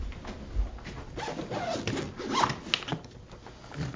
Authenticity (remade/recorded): recorded